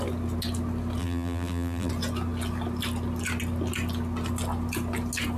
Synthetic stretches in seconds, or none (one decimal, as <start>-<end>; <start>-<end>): 1.0-1.9